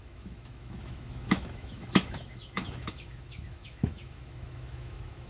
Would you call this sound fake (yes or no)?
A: yes